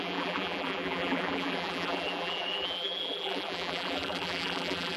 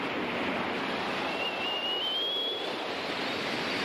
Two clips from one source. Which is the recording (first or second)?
second